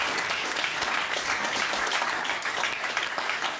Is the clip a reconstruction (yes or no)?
yes